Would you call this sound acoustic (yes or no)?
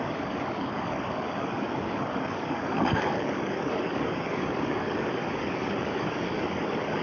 no